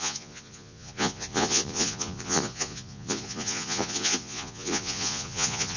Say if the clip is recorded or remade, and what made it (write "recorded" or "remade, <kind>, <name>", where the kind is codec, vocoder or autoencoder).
remade, vocoder, Vocos